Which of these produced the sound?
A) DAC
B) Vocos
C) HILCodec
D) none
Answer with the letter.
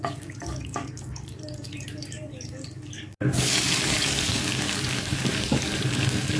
A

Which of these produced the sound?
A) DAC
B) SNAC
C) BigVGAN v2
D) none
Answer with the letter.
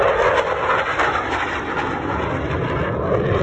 D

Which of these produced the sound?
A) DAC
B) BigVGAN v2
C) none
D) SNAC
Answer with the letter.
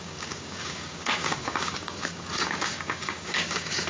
A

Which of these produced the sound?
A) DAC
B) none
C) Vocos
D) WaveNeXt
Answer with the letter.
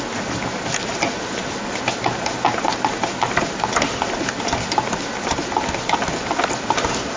B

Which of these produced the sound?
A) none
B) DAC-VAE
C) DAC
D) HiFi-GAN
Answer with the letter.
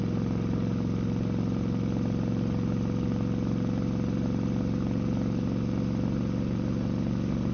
A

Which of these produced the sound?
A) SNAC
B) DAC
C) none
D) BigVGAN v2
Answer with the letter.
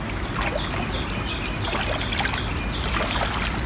C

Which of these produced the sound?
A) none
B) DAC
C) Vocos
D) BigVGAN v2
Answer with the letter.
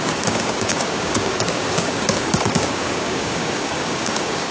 B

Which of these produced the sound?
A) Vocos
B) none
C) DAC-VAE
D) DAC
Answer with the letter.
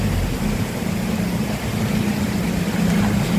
B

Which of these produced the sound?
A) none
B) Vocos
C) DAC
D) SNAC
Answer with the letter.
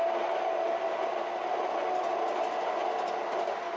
A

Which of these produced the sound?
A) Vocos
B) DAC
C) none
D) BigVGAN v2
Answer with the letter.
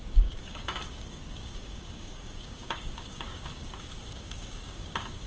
B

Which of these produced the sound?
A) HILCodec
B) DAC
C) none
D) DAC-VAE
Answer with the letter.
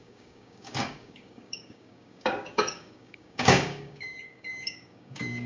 B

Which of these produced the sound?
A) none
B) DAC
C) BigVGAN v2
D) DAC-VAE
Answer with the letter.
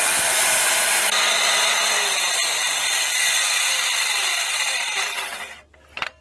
A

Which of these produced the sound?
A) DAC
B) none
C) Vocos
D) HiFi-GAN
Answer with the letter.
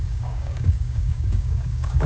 A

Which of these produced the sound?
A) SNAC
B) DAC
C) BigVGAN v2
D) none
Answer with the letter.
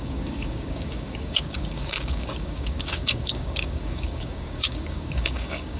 B